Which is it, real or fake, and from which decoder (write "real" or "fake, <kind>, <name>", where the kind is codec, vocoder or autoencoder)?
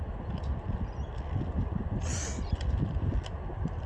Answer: real